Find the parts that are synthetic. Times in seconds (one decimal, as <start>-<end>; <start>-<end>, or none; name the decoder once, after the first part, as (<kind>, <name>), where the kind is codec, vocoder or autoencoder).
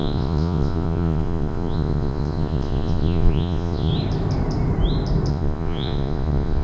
0.0-3.9 (vocoder, Vocos); 5.3-6.6